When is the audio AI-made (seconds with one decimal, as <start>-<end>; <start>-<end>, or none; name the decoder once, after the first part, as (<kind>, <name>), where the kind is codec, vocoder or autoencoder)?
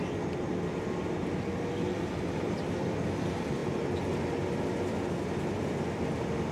none